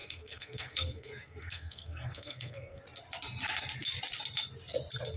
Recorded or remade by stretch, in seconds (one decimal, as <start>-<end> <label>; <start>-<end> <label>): 0.0-2.8 remade; 2.8-5.2 recorded